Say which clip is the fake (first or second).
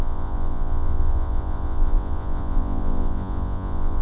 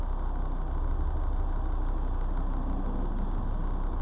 first